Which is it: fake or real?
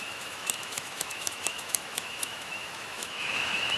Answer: fake